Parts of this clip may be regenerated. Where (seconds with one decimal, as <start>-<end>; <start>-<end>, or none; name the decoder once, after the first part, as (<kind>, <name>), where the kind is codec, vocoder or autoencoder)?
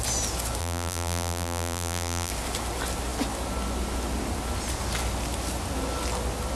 0.6-2.3 (vocoder, BigVGAN v2)